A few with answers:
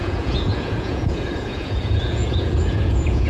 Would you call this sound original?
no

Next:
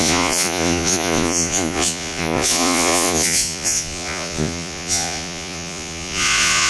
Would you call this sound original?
no